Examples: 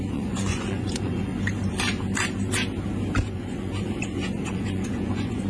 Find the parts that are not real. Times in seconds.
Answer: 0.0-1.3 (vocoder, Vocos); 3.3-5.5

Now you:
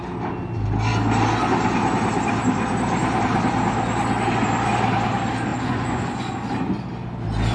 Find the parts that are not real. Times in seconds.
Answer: 5.5-6.3 (vocoder, Vocos)

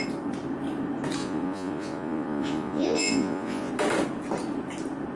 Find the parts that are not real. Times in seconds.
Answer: 1.2-3.7 (vocoder, Vocos)